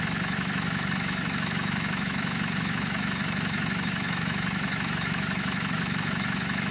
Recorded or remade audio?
remade